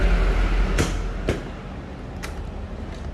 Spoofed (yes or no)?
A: no